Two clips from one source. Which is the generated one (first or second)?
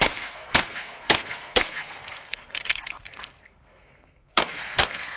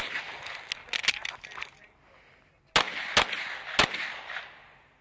first